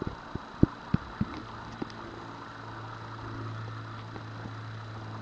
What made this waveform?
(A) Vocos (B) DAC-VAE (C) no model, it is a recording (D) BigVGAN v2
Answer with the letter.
C